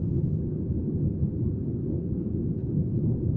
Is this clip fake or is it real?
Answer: real